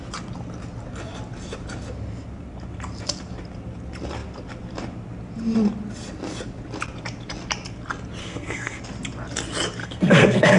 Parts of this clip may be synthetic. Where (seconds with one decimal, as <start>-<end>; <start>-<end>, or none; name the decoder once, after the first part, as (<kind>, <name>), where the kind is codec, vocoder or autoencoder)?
8.2-8.8 (codec, SNAC); 9.8-10.6